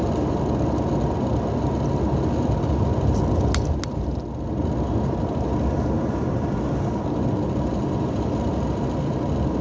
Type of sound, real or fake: real